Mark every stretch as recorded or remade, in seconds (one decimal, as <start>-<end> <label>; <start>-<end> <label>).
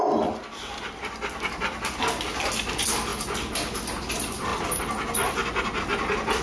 0.0-6.4 recorded